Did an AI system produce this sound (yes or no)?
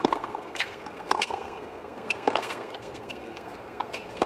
yes